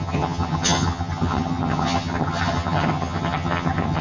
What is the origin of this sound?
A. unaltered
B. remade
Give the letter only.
B